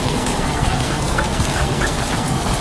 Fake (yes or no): yes